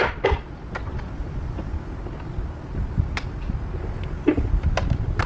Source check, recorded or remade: recorded